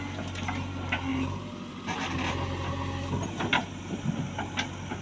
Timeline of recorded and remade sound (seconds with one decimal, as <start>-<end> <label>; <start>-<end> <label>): 0.0-5.0 recorded